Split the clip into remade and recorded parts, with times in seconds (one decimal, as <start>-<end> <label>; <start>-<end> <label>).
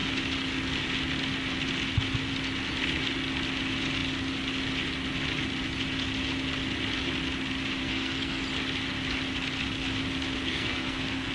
0.0-7.8 recorded; 7.8-8.4 remade; 8.4-10.5 recorded; 10.5-11.3 remade